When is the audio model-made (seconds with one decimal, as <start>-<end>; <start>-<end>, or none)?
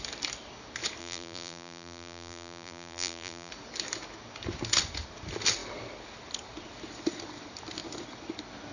1.0-3.5